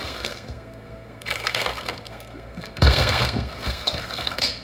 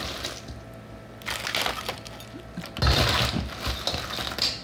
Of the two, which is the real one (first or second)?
second